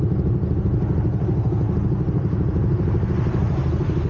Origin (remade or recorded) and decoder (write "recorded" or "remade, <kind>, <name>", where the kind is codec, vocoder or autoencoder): recorded